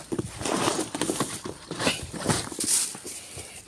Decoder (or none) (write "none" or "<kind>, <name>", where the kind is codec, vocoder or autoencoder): none